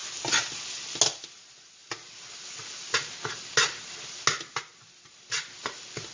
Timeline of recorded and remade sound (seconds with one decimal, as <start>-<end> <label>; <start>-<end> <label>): 0.0-6.1 recorded